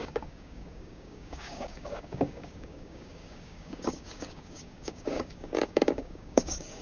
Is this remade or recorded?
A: remade